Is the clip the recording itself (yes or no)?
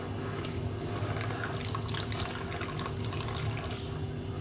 yes